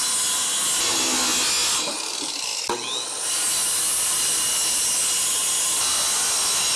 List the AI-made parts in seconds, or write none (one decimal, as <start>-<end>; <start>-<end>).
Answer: none